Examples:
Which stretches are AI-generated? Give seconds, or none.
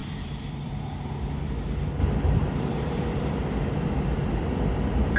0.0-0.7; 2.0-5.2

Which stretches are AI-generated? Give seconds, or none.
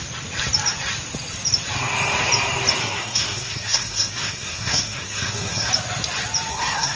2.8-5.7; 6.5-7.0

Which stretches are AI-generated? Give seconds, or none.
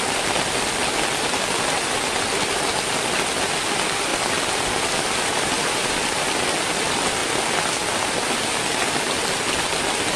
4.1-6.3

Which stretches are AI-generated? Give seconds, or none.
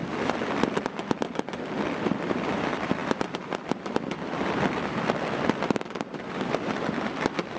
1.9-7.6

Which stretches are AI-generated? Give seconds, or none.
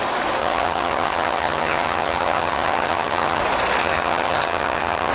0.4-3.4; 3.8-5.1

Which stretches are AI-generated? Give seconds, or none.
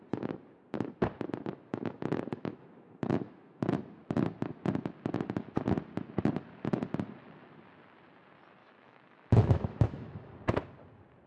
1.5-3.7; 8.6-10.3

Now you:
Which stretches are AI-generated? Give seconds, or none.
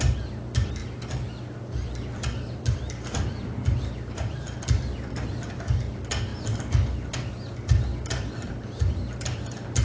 none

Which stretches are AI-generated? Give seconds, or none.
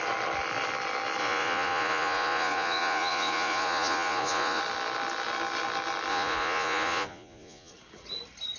1.2-4.6; 6.1-7.7